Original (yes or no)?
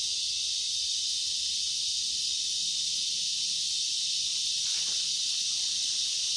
yes